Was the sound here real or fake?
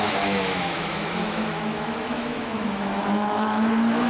fake